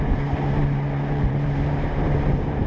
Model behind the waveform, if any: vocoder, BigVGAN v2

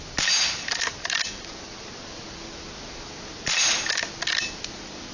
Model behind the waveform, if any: none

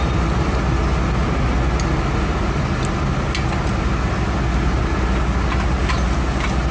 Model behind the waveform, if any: none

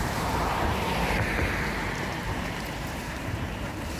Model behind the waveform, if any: vocoder, BigVGAN v2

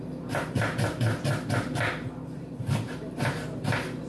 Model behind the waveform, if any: vocoder, BigVGAN v2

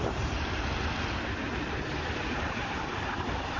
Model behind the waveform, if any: vocoder, BigVGAN v2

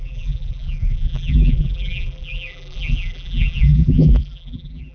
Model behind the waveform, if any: vocoder, BigVGAN v2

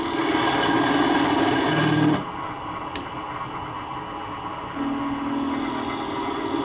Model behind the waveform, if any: none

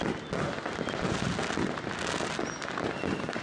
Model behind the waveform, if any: none